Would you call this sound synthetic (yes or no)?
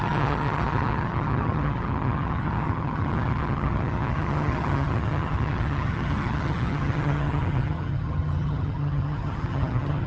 yes